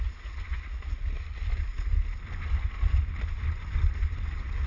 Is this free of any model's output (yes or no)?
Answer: yes